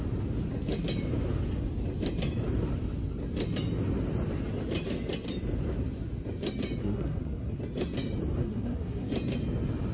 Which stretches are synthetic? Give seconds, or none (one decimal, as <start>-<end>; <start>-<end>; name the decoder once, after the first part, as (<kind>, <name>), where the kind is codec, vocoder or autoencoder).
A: 6.8-7.6 (codec, SNAC); 8.4-9.1